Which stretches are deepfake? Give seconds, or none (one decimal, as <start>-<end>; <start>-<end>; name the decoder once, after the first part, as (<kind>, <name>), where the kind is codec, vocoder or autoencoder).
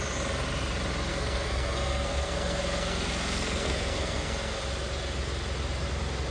1.1-4.6 (codec, SNAC)